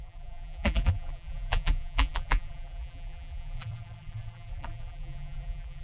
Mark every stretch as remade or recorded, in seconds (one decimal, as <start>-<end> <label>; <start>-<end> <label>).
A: 0.0-5.8 remade